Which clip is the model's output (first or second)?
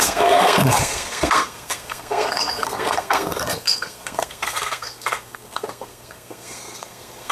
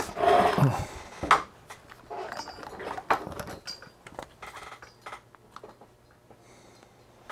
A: first